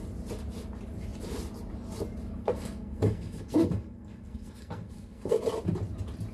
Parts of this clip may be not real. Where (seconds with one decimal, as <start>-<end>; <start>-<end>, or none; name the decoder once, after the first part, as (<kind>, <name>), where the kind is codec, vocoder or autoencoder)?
2.4-5.4 (codec, SNAC)